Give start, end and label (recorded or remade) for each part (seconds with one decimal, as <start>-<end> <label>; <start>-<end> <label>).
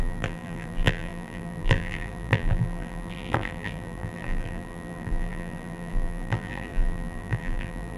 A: 0.0-8.0 remade